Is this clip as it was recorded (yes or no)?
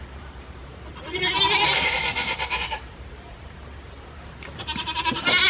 no